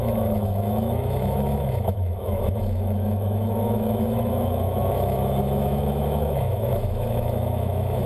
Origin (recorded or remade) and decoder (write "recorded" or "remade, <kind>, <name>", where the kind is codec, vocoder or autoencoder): remade, autoencoder, DAC-VAE